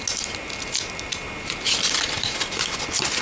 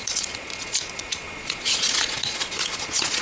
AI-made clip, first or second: second